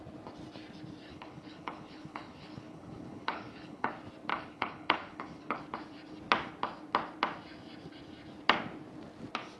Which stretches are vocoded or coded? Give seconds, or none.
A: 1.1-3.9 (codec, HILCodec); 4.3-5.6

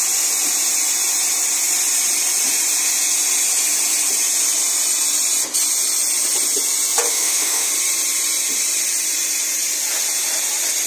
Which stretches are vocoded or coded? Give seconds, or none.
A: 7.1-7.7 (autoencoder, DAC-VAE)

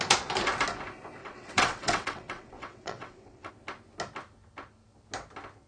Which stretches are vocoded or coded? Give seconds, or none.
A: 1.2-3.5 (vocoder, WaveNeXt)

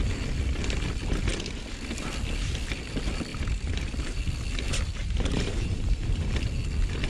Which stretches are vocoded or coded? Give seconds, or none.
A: 3.3-4.2 (vocoder, BigVGAN v2); 5.0-6.3